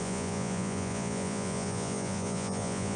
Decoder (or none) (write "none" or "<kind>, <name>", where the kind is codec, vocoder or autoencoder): vocoder, Vocos